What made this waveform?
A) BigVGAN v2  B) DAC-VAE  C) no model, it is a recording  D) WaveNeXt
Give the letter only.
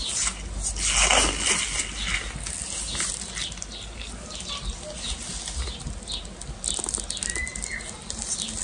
C